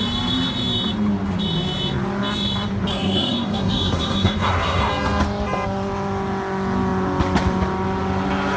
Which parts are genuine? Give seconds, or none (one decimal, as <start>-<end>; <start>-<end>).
0.0-2.9; 4.9-8.6